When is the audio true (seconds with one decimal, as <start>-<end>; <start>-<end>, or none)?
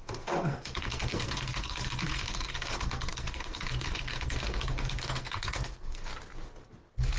6.1-7.2